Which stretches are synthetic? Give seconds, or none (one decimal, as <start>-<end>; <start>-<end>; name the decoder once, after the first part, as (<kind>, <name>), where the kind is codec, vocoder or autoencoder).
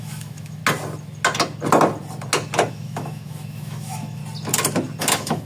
0.0-0.6 (autoencoder, DAC-VAE); 2.7-4.2; 5.0-5.5